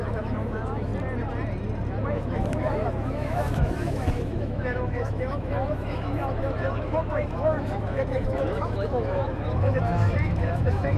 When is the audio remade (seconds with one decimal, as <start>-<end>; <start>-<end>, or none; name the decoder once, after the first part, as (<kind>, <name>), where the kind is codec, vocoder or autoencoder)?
0.0-0.9 (autoencoder, DAC-VAE); 2.1-11.0